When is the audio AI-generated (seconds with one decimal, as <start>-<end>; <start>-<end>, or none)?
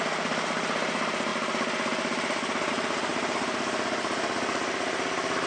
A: none